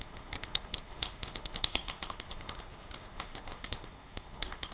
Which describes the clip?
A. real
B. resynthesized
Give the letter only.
B